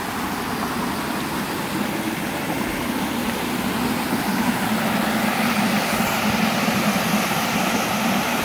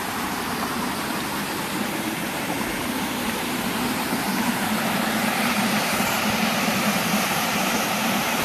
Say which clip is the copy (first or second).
second